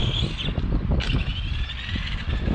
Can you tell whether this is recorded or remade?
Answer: recorded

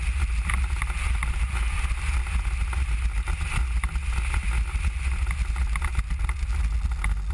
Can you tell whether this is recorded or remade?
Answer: recorded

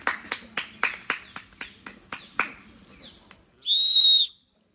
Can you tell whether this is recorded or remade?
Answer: recorded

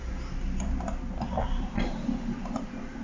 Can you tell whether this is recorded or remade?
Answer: recorded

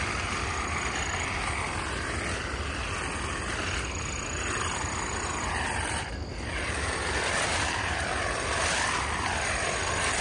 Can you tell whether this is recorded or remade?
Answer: recorded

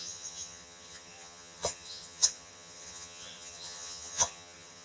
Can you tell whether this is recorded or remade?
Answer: remade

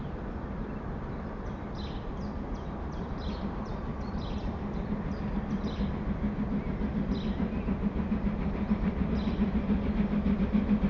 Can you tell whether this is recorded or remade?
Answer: recorded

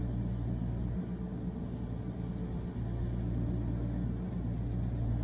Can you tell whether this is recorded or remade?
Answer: recorded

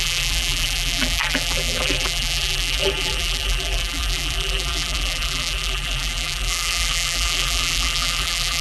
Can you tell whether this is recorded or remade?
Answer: remade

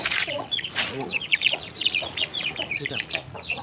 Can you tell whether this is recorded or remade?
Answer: remade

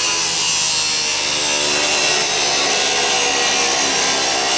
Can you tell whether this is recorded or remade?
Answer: recorded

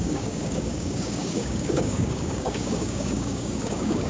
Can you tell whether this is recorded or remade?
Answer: remade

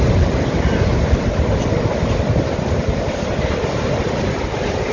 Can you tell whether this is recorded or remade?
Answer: recorded